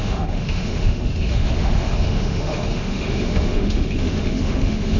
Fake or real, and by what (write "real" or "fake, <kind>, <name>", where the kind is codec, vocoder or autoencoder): fake, autoencoder, DAC-VAE